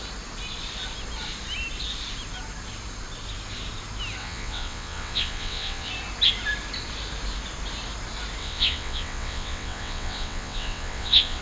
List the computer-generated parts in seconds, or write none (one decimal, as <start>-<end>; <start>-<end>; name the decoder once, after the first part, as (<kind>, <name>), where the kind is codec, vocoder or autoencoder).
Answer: 4.2-5.9 (vocoder, WaveNeXt); 8.4-11.4